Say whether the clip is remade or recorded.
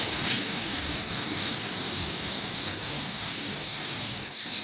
remade